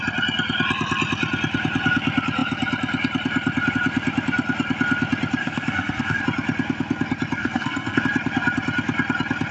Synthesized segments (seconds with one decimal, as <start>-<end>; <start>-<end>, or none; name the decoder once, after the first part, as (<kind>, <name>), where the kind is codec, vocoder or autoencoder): 5.4-6.2 (codec, SNAC); 7.4-8.0